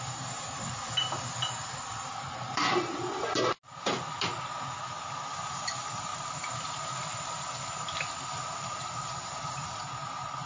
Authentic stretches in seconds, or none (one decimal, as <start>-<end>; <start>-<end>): 0.0-10.5